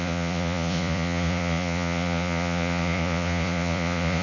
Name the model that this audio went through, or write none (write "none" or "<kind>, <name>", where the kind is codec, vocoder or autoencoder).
vocoder, Vocos